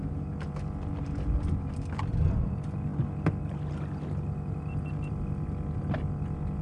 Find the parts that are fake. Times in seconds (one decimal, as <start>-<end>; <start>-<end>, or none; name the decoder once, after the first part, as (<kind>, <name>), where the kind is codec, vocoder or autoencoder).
none